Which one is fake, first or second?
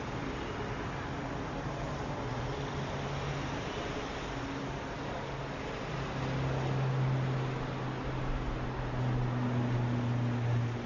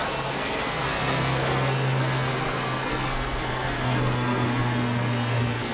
second